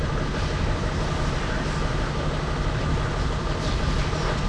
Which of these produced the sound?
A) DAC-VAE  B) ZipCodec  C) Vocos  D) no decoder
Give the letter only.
D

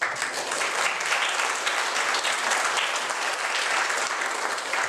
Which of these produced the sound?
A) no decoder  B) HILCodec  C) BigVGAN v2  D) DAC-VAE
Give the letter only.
A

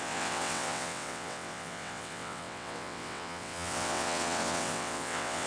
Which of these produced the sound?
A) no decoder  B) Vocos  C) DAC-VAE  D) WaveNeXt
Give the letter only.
D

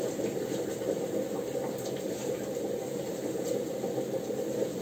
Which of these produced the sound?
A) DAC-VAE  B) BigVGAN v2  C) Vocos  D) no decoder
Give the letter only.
D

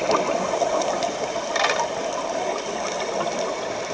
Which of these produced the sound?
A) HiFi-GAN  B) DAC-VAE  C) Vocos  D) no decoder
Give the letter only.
D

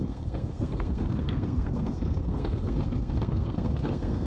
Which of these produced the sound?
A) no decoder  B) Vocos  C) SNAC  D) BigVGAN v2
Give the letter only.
C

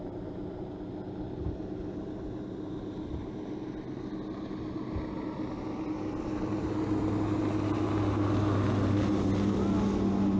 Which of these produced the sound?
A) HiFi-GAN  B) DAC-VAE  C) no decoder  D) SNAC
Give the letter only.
C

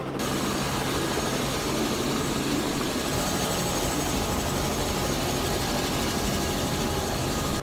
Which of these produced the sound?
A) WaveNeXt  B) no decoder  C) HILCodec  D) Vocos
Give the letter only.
B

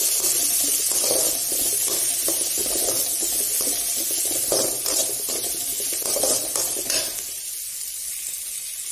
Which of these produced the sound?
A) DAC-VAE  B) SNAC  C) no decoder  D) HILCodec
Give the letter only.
C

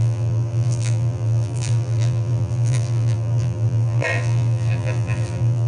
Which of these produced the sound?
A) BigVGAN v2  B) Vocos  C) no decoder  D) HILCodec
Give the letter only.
A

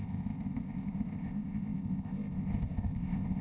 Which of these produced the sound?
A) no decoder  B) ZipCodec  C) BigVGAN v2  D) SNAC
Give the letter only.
B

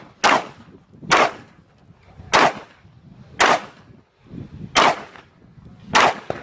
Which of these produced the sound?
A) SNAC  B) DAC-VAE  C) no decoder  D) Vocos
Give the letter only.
C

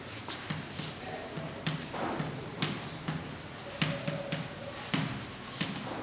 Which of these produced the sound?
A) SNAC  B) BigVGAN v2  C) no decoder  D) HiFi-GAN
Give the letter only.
C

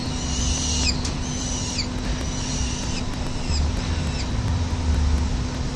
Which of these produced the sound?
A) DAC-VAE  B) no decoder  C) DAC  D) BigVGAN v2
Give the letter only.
B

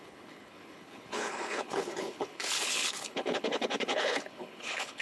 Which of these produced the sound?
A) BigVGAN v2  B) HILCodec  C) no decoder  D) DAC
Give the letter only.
B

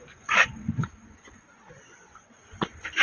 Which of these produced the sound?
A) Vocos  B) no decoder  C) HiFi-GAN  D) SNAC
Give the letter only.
A